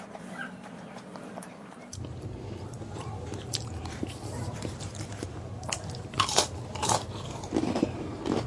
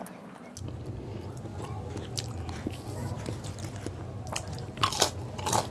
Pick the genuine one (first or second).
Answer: second